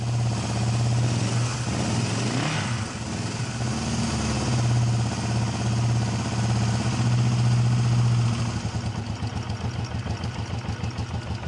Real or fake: real